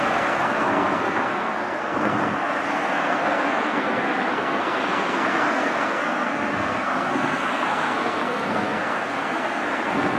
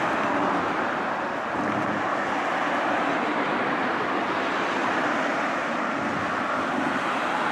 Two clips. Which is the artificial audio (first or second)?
first